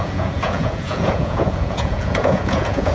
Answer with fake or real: fake